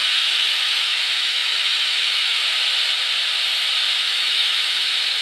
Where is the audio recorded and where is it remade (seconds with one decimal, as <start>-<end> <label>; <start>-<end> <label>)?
0.0-2.4 remade; 2.4-4.0 recorded; 4.0-5.2 remade